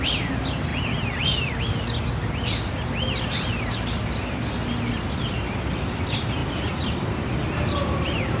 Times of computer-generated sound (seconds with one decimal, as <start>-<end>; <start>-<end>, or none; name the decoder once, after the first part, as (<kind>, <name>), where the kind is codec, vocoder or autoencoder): none